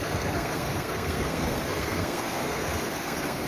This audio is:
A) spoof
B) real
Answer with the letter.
A